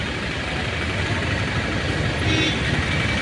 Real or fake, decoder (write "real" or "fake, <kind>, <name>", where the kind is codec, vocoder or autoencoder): real